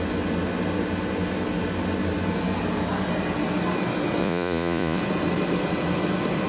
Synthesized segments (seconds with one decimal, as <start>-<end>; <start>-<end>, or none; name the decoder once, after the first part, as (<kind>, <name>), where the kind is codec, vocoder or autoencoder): 4.2-5.0 (vocoder, Vocos)